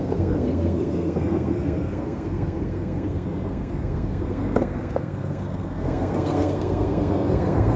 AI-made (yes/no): yes